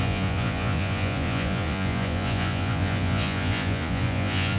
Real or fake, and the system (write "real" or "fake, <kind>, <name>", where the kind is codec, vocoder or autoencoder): fake, vocoder, Vocos